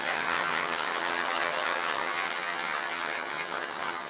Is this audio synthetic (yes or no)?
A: yes